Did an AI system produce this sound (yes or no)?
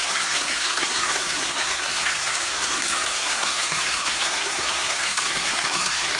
yes